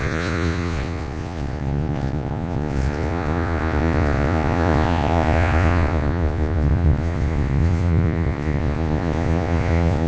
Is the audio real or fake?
fake